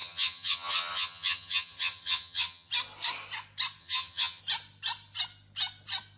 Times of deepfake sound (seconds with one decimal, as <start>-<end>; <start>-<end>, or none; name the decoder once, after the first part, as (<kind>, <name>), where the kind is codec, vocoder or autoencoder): 0.0-2.7 (vocoder, HiFi-GAN); 3.8-4.4